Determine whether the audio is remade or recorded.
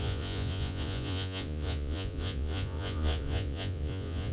remade